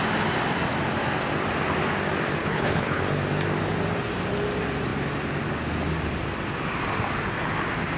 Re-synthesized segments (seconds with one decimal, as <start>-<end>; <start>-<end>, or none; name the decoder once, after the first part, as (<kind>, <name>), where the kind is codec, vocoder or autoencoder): 2.4-3.0 (codec, HILCodec)